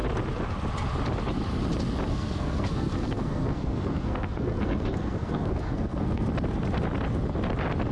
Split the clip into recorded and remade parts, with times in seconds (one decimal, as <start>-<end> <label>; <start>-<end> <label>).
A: 0.0-2.1 recorded; 2.1-6.3 remade; 6.3-7.9 recorded